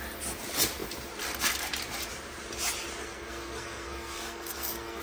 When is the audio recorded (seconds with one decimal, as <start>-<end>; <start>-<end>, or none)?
0.0-3.0